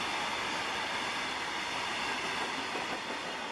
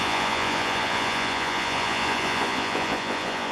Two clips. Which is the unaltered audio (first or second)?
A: first